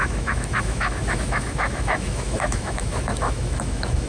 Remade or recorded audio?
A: remade